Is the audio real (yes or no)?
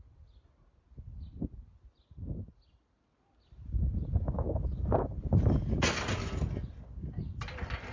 yes